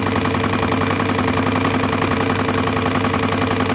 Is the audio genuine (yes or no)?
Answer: yes